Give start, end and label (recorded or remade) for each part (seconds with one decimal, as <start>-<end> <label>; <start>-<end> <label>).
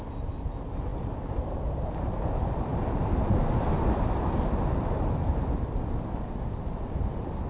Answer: 0.0-2.7 recorded; 2.7-4.1 remade; 4.1-7.5 recorded